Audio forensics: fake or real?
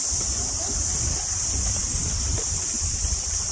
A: real